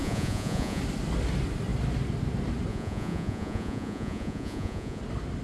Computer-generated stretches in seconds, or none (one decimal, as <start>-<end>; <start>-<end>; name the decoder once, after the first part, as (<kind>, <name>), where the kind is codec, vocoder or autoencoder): 0.0-0.8 (vocoder, Vocos); 2.7-5.0